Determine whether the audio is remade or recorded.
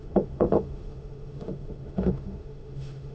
remade